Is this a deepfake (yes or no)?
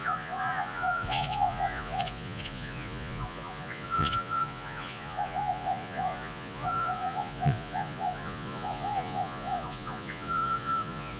yes